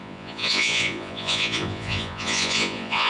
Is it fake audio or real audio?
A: fake